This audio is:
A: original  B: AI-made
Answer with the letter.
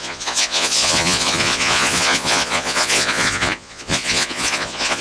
B